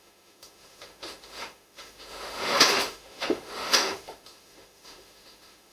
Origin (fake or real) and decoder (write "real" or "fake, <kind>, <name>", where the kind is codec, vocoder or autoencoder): fake, autoencoder, DAC-VAE